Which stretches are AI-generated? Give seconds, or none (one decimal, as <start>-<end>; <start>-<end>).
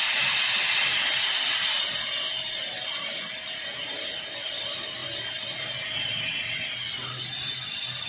none